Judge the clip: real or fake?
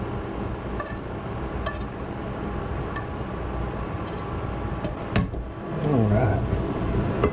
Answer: real